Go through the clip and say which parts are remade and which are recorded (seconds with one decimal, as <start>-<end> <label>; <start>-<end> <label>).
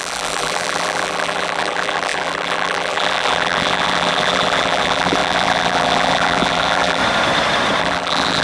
0.0-7.0 remade; 7.0-7.8 recorded; 7.8-8.4 remade